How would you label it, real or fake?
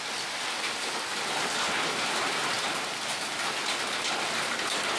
real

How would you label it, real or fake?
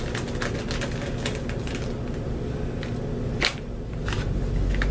real